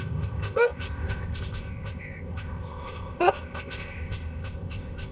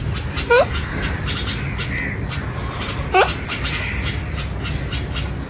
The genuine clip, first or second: second